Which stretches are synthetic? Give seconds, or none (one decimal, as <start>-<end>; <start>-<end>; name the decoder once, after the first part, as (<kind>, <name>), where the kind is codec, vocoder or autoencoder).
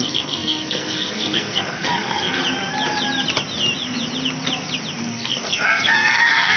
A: 0.0-2.4 (codec, SNAC); 5.0-6.6